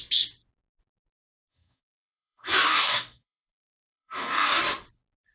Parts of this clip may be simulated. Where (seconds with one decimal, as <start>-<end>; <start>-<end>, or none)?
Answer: 1.4-4.6

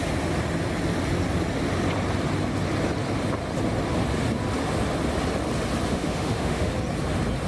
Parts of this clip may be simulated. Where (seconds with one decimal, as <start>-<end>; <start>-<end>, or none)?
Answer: 5.9-6.7